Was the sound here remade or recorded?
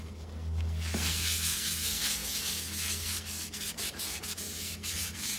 remade